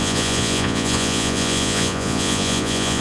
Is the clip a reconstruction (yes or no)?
yes